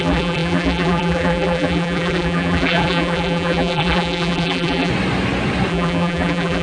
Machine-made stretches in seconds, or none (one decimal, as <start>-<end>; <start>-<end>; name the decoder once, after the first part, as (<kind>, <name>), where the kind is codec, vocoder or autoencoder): 0.0-4.9 (vocoder, BigVGAN v2); 5.7-6.6